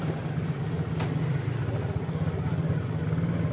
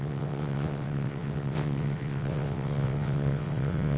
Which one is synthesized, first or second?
second